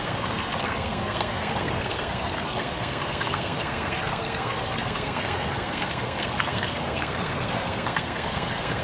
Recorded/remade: remade